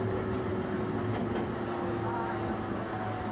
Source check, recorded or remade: recorded